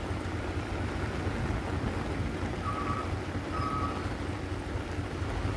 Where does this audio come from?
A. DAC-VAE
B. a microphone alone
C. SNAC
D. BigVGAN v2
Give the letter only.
B